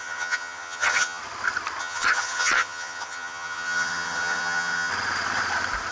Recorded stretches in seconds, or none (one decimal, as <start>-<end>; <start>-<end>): 1.2-1.8; 4.9-5.9